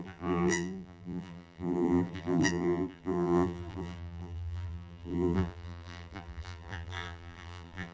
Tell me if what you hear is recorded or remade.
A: remade